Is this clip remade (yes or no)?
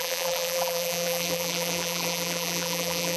yes